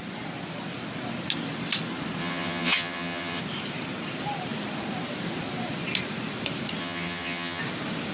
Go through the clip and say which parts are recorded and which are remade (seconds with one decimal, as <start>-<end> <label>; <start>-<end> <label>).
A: 0.0-2.2 recorded; 2.2-3.4 remade; 3.4-6.8 recorded; 6.8-7.6 remade; 7.6-8.1 recorded